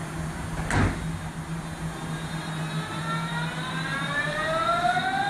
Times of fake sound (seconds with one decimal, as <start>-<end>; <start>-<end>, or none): none